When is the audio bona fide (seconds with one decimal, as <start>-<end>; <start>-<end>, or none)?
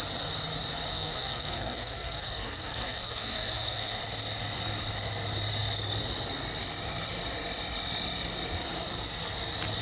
0.0-0.9; 4.0-9.8